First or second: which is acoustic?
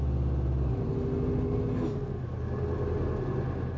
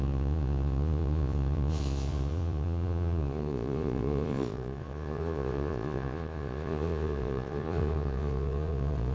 first